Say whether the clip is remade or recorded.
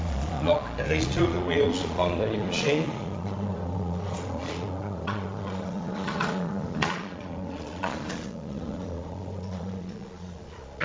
remade